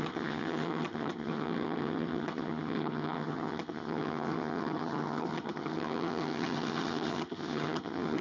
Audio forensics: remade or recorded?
remade